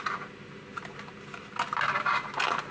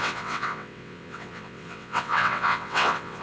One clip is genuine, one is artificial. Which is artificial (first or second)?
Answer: second